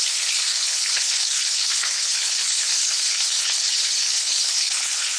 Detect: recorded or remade remade